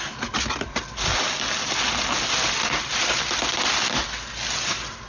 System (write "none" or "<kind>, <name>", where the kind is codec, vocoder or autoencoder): none